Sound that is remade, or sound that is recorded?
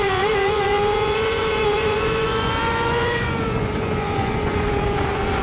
remade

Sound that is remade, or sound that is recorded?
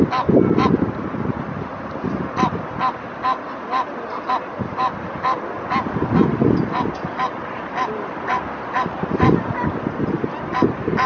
recorded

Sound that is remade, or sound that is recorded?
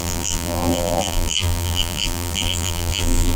remade